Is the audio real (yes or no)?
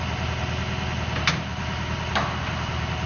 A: yes